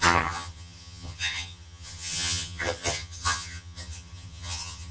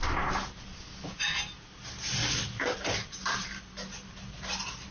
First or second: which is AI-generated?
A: first